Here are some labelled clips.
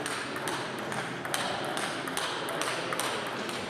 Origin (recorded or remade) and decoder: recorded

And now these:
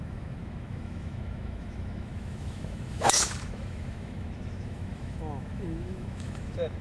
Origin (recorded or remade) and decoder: remade, autoencoder, DAC-VAE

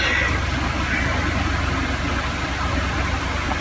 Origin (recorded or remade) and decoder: recorded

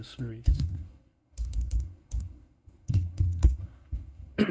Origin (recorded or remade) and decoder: remade, codec, SNAC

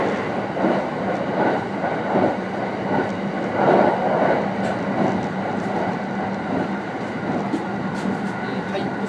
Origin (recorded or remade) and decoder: recorded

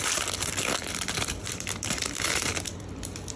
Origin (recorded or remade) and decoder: remade, vocoder, BigVGAN v2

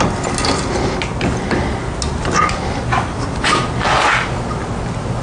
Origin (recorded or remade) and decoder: recorded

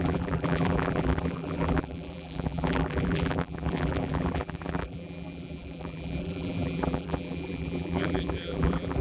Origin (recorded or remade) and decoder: remade, vocoder, BigVGAN v2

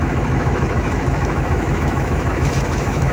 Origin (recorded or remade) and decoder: remade, autoencoder, DAC-VAE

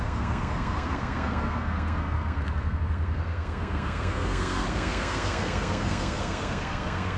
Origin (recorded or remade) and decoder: remade, codec, SNAC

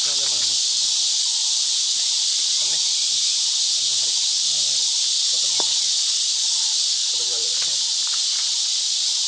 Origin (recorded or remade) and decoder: recorded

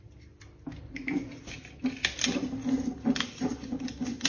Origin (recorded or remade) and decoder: recorded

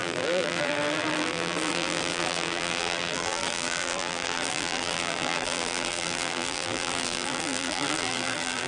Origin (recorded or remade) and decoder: remade, vocoder, BigVGAN v2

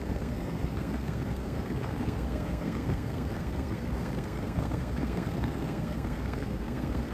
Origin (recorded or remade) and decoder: remade, codec, SNAC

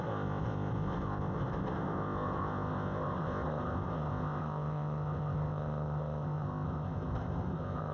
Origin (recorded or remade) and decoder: remade, codec, ZipCodec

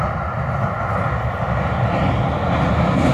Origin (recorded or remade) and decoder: recorded